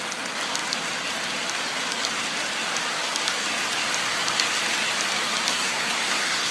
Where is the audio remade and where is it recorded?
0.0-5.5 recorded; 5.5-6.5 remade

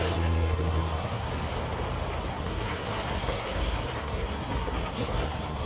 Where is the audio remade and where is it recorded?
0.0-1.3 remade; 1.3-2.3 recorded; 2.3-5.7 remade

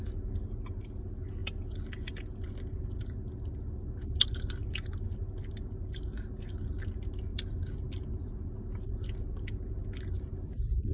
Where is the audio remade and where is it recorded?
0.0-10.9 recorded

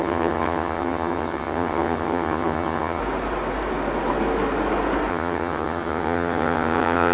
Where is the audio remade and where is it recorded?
0.0-3.0 remade; 3.0-5.1 recorded; 5.1-7.1 remade

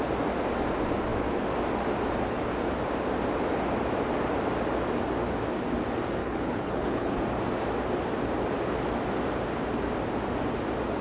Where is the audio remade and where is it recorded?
0.0-6.2 recorded; 6.2-7.2 remade; 7.2-11.0 recorded

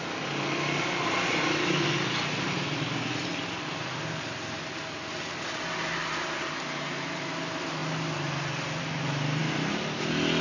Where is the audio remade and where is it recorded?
0.0-10.4 recorded

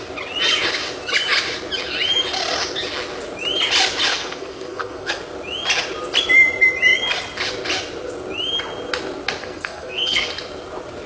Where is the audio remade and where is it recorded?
0.0-4.1 recorded; 4.1-5.2 remade; 5.2-9.4 recorded; 9.4-10.3 remade; 10.3-11.1 recorded